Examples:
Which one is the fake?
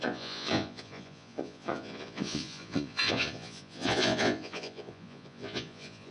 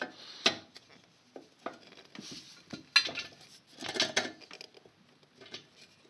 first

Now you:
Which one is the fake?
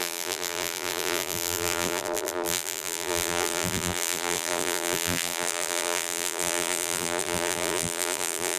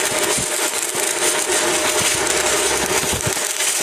first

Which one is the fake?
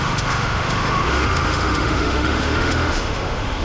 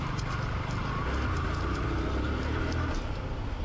first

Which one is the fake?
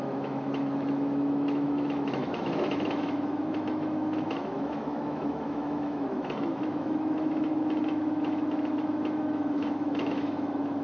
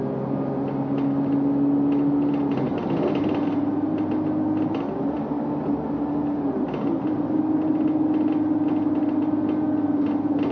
first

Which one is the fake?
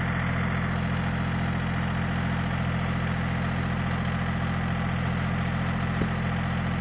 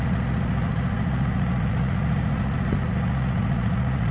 second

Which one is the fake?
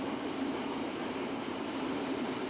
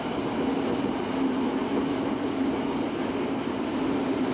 first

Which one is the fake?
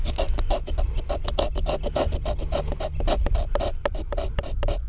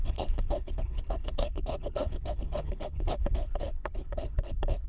second